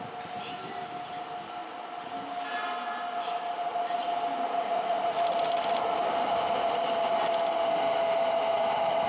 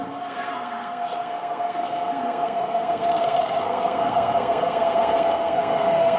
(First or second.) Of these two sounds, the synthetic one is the second